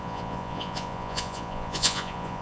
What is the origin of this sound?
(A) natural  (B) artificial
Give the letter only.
B